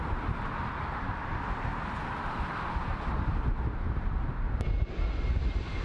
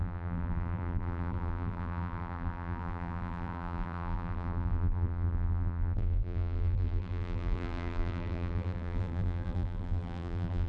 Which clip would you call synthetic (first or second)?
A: second